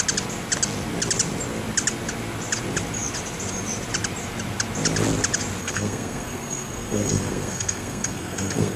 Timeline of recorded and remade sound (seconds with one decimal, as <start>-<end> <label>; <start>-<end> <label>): 0.0-5.6 recorded; 5.6-8.8 remade